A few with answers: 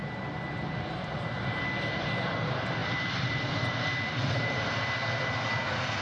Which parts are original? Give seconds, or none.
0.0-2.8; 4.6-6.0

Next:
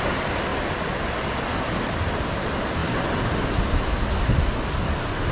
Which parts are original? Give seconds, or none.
0.0-5.3

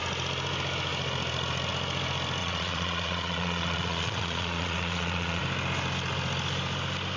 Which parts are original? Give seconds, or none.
0.0-2.4; 5.4-7.2

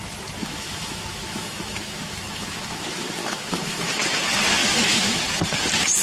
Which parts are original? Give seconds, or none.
0.0-0.4; 4.0-4.6; 5.2-6.0